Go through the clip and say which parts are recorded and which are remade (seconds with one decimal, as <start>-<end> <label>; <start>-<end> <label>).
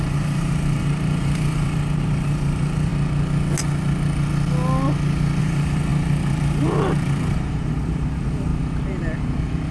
0.0-2.9 remade; 2.9-5.4 recorded; 5.4-8.5 remade; 8.5-9.7 recorded